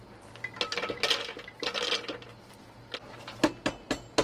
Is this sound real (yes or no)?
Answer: yes